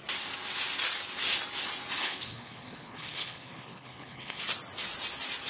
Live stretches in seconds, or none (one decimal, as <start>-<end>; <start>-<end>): 0.0-2.0; 4.4-5.5